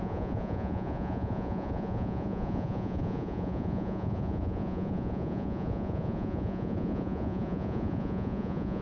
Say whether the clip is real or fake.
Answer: fake